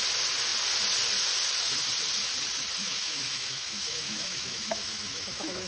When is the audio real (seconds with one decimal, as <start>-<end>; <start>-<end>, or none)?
0.0-2.8